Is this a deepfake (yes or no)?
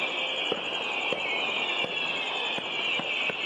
no